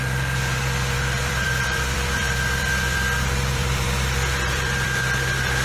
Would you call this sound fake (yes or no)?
yes